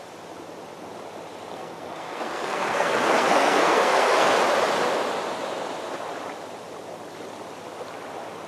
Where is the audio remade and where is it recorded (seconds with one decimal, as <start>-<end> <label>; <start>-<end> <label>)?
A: 0.0-1.5 recorded; 1.5-4.4 remade; 4.4-8.5 recorded